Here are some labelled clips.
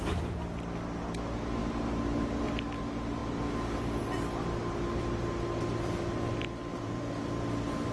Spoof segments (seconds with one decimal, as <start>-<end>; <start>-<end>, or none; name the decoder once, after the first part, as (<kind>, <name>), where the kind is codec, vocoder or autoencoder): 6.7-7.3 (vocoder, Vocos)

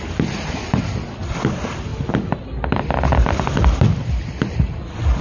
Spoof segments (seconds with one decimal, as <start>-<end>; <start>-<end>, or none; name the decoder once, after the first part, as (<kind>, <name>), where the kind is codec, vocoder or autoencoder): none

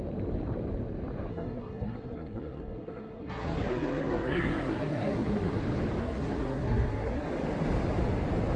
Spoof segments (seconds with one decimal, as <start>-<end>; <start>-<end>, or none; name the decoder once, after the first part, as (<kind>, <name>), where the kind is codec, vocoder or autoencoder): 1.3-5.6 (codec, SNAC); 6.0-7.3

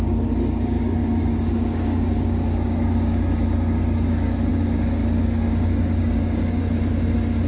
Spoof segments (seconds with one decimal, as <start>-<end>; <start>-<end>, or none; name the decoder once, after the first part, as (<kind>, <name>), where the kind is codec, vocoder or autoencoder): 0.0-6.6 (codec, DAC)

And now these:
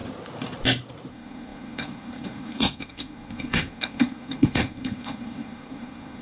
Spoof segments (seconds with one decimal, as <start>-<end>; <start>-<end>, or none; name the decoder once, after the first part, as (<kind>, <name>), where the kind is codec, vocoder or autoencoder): 1.1-6.2 (codec, SNAC)